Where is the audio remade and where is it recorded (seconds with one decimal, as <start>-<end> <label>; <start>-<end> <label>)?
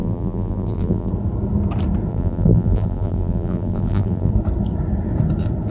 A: 0.0-1.1 remade; 1.1-2.1 recorded; 2.1-4.3 remade; 4.3-5.7 recorded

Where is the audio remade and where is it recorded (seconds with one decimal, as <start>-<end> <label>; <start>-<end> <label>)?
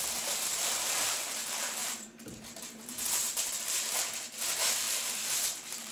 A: 0.0-5.9 remade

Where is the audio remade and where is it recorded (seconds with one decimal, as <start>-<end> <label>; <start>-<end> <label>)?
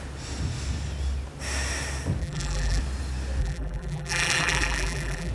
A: 0.0-2.2 recorded; 2.2-2.8 remade; 2.8-3.4 recorded; 3.4-5.3 remade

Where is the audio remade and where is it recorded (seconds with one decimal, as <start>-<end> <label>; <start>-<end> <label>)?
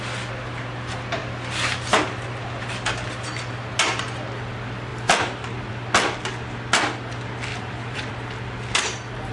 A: 0.0-7.5 recorded; 7.5-8.1 remade; 8.1-9.3 recorded